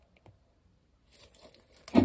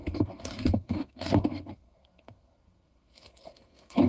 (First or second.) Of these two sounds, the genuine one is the first